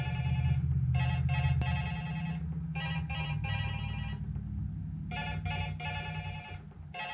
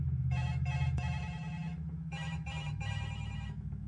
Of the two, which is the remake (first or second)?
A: second